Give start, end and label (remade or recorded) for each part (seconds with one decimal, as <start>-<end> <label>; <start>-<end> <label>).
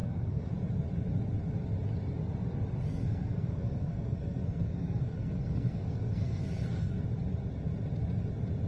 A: 0.0-0.5 remade; 0.5-2.9 recorded; 2.9-6.9 remade; 6.9-8.7 recorded